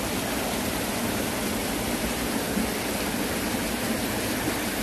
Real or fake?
real